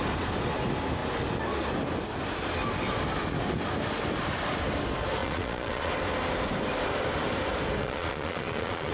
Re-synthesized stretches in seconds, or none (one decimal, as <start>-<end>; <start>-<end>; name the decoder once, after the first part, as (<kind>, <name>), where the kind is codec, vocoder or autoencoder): 5.2-5.9 (vocoder, Vocos); 7.8-8.9